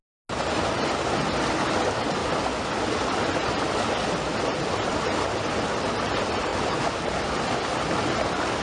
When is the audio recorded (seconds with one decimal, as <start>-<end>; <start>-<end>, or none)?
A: 0.0-6.5; 7.2-8.6